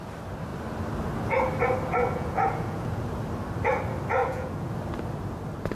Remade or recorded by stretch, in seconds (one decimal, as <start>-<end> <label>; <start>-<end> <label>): 0.0-2.0 recorded; 2.0-3.0 remade; 3.0-4.2 recorded; 4.2-4.7 remade; 4.7-5.7 recorded